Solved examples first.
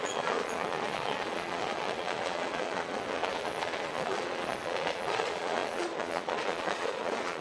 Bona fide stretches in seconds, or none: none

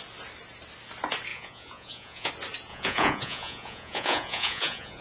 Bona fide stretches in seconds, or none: 0.0-1.3; 2.3-2.7